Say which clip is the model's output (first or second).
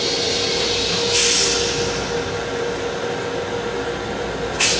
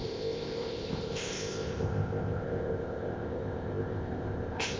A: second